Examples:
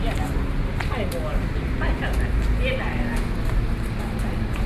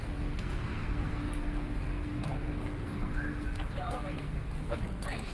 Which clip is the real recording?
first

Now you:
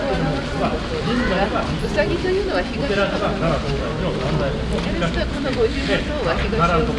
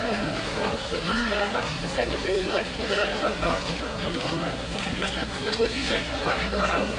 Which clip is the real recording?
first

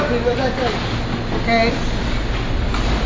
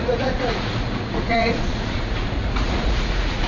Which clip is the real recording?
first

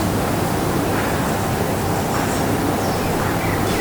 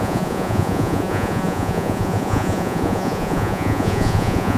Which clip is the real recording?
first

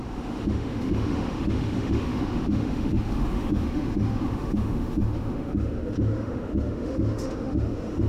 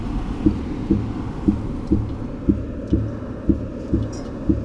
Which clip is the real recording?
second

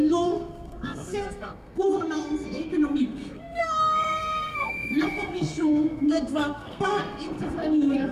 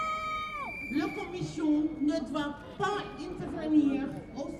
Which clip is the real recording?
second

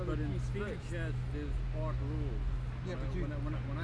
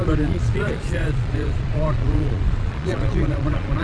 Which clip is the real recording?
first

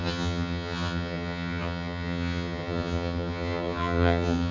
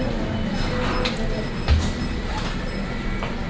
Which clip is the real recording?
second